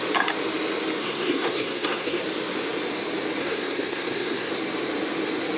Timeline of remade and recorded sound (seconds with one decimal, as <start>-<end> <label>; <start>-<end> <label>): 0.0-1.0 recorded; 1.0-2.2 remade; 2.2-3.4 recorded; 3.4-4.5 remade; 4.5-5.6 recorded